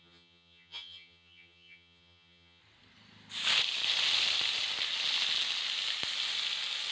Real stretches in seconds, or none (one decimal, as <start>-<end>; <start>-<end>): 2.6-6.9